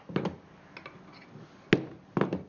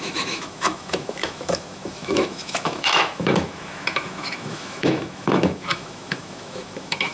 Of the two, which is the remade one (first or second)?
second